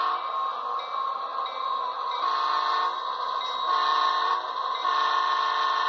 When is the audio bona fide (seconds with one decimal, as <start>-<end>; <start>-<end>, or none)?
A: 0.0-1.3; 2.2-3.9; 4.9-5.9